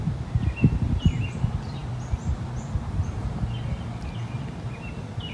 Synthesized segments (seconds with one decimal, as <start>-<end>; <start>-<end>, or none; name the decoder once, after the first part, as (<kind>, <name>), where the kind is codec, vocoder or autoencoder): none